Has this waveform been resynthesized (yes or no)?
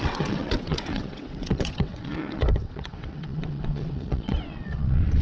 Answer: yes